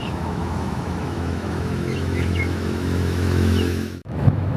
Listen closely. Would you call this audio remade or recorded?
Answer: remade